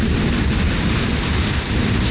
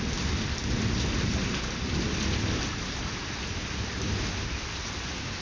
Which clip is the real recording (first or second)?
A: second